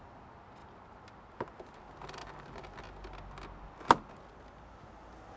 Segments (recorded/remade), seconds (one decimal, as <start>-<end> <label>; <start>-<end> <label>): 0.0-5.4 recorded